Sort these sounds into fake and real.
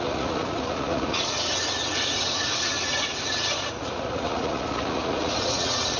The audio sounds fake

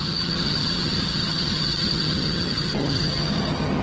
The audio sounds fake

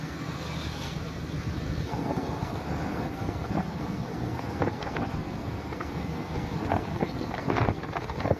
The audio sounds fake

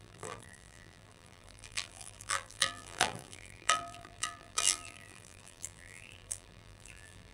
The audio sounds fake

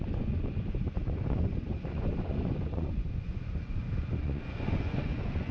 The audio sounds fake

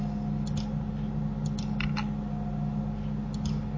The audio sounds real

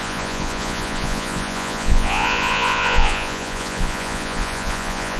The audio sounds fake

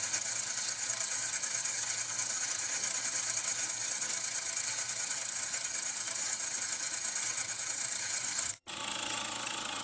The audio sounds fake